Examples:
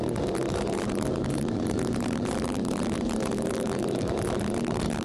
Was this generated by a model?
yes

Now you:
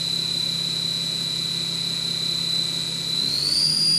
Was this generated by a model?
no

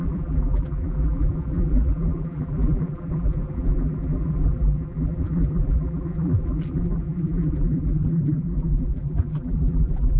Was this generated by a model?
yes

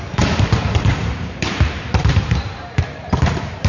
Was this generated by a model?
yes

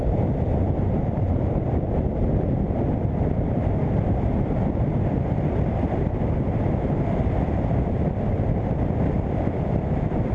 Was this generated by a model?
yes